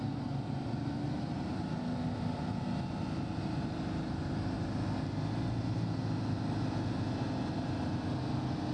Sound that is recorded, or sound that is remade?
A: recorded